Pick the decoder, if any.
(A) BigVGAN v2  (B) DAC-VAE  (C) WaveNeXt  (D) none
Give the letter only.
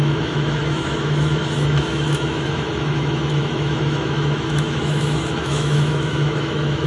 B